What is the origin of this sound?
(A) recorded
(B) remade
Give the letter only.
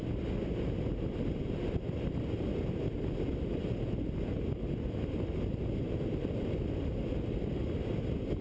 A